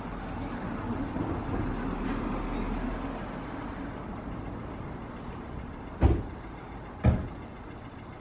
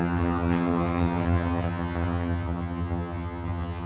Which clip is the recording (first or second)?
first